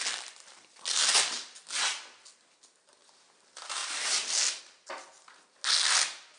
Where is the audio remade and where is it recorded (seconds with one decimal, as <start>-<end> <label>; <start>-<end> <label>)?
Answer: 0.0-6.4 recorded